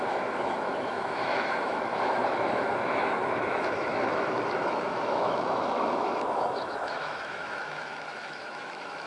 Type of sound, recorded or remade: remade